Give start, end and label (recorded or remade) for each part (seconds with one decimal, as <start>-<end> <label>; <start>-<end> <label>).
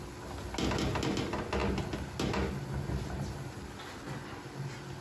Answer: 0.0-5.0 recorded